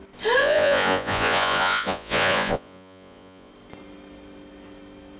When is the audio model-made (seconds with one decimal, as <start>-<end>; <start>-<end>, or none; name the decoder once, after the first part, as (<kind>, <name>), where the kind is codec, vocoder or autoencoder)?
0.4-3.5 (vocoder, Vocos)